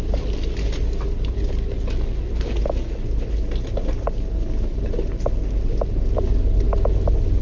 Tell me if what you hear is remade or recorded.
recorded